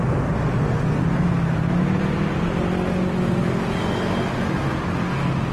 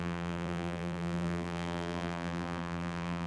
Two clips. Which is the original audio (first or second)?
first